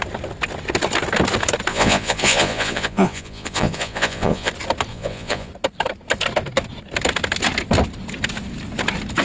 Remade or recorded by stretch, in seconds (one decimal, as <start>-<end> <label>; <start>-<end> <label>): 0.0-1.7 recorded; 1.7-4.5 remade; 4.5-4.9 recorded; 4.9-5.5 remade; 5.5-9.2 recorded